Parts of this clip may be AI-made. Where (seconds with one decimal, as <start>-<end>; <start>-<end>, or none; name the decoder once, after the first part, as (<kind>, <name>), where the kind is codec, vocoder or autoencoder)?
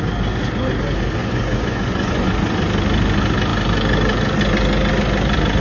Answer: 1.2-2.3 (vocoder, Vocos)